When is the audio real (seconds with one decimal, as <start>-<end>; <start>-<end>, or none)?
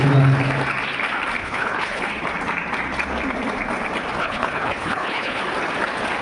0.0-1.4; 2.0-4.2; 5.4-6.2